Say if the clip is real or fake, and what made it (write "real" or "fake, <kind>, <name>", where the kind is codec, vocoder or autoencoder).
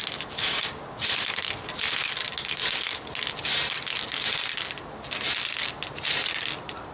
real